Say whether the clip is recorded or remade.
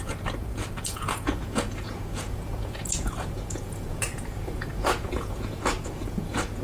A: remade